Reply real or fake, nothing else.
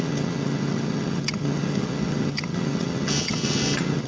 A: fake